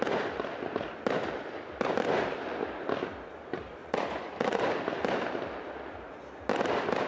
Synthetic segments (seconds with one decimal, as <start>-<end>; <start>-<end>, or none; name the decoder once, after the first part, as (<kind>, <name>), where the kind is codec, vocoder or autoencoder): 3.8-4.6 (vocoder, Vocos)